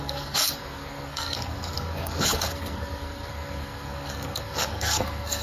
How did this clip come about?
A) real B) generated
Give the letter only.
B